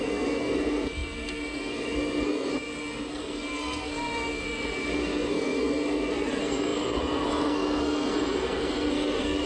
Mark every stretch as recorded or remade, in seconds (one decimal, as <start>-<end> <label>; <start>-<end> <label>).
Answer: 0.0-9.5 remade